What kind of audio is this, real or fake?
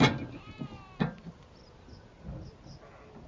real